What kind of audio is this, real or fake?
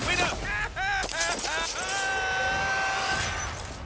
real